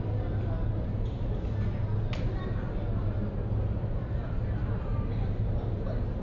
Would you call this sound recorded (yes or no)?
yes